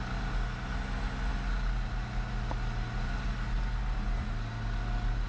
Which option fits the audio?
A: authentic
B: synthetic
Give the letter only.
A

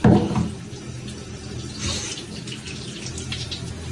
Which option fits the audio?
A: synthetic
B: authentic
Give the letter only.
B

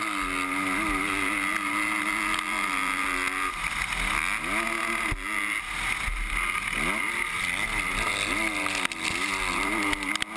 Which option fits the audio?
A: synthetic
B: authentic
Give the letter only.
B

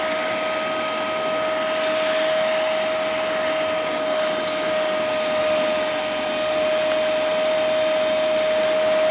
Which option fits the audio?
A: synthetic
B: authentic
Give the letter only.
B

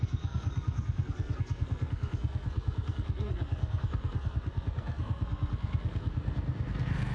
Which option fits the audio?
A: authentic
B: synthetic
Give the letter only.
B